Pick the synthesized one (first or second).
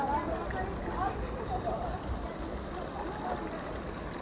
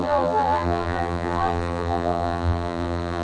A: second